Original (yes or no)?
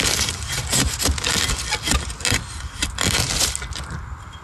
yes